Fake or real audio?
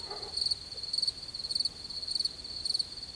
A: real